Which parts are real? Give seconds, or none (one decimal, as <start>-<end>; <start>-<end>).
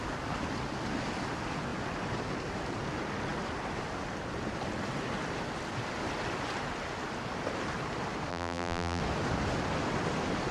0.0-8.3; 9.0-10.5